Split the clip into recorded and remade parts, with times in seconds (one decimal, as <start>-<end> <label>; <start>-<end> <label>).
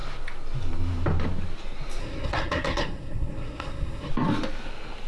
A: 0.0-2.0 recorded; 2.0-4.1 remade; 4.1-5.1 recorded